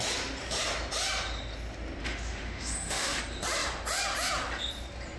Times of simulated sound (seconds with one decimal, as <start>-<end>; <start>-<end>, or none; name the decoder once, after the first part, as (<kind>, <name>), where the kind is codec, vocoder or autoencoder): 2.0-3.2 (autoencoder, DAC-VAE)